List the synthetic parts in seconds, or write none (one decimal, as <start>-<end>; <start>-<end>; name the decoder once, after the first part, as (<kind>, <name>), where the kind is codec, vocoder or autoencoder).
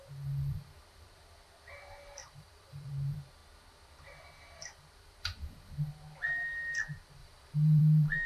2.2-2.9 (vocoder, BigVGAN v2); 7.2-7.8